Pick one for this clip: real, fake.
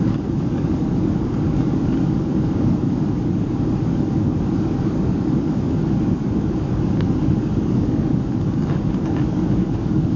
fake